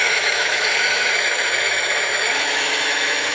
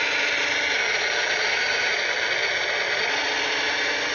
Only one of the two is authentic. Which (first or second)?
second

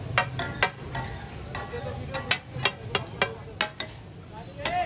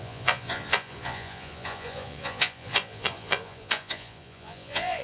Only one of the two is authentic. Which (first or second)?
first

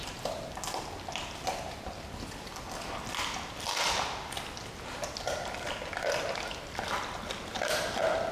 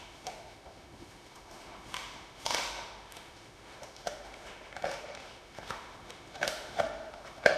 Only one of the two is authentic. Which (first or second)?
first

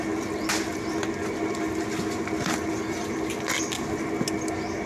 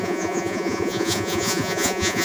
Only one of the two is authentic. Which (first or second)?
first